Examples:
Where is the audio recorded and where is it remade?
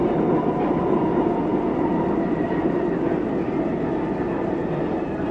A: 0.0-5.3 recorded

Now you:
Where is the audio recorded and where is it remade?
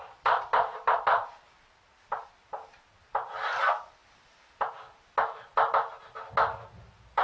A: 0.0-7.2 recorded